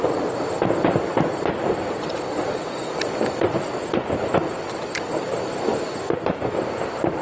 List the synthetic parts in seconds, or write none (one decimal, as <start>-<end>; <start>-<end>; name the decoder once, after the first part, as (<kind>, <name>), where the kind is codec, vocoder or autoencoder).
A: none